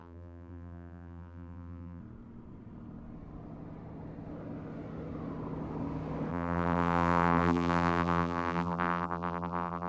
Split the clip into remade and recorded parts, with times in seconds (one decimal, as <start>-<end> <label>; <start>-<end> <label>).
0.0-2.0 remade; 2.0-6.3 recorded; 6.3-9.9 remade